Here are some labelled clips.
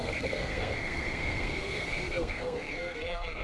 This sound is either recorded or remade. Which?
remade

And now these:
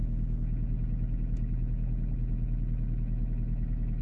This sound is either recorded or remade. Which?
recorded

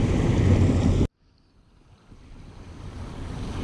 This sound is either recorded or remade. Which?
recorded